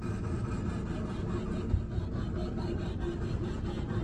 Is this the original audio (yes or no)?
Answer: yes